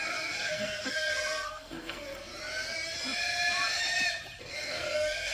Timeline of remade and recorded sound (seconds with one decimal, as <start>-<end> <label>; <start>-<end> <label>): 0.0-2.3 remade; 2.3-4.4 recorded; 4.4-5.3 remade